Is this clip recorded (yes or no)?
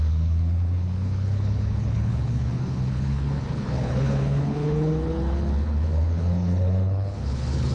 no